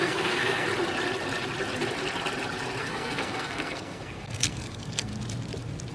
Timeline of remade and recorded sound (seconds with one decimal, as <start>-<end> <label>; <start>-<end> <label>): 0.0-0.7 remade; 0.7-2.8 recorded; 2.8-5.1 remade; 5.1-5.9 recorded